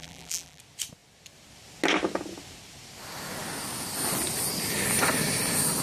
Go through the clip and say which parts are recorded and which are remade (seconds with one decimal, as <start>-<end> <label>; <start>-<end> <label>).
0.0-0.6 remade; 0.6-5.8 recorded